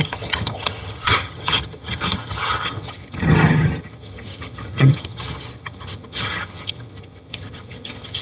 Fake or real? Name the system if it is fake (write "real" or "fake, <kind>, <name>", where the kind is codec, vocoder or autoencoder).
fake, vocoder, HiFi-GAN